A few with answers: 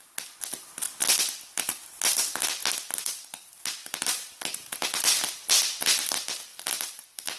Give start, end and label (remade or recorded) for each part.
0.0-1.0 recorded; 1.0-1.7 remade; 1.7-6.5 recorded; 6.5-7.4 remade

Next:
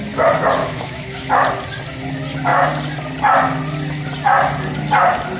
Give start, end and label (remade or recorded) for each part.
0.0-0.6 recorded; 0.6-1.3 remade; 1.3-5.4 recorded

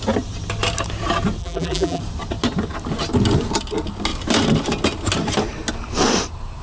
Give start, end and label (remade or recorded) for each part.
0.0-1.4 recorded; 1.4-2.0 remade; 2.0-6.6 recorded

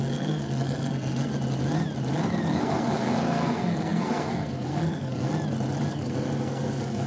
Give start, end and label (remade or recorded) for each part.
0.0-1.3 remade; 1.3-2.5 recorded; 2.5-5.3 remade; 5.3-5.9 recorded; 5.9-7.1 remade

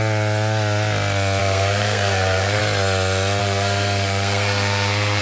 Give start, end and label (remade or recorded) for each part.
0.0-1.4 recorded; 1.4-2.6 remade; 2.6-3.4 recorded; 3.4-5.2 remade

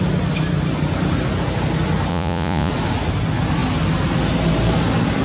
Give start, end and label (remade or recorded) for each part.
0.0-2.1 recorded; 2.1-2.7 remade; 2.7-5.2 recorded